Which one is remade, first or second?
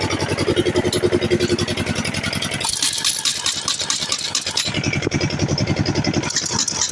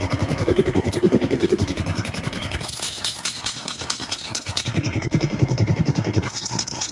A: second